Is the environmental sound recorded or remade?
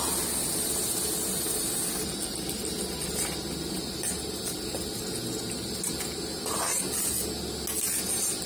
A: recorded